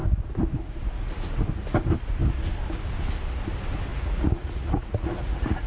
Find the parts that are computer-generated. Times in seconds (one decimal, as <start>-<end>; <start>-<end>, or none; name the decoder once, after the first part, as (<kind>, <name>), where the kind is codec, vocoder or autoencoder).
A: 3.9-5.7 (vocoder, Vocos)

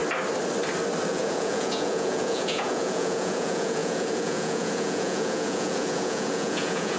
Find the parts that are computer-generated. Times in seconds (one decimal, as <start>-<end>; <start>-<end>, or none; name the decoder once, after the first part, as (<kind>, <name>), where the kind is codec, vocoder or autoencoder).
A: 1.1-7.0 (vocoder, Vocos)